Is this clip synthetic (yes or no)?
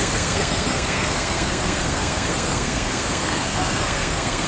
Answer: yes